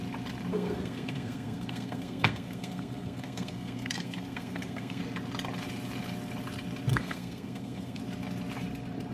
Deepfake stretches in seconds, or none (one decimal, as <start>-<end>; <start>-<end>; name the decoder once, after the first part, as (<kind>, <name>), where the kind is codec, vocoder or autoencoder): 0.5-5.0 (codec, SNAC); 6.9-8.0